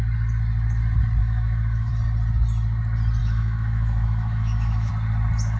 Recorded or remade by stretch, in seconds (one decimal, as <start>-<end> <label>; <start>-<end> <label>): 0.0-1.2 recorded; 1.2-1.9 remade; 1.9-3.2 recorded; 3.2-4.9 remade; 4.9-5.6 recorded